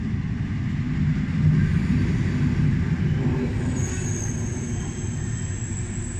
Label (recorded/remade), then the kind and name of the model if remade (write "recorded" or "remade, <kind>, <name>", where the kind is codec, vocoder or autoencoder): recorded